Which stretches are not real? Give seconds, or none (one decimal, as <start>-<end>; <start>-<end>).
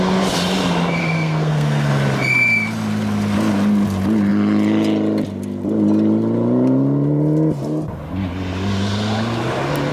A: 1.0-1.9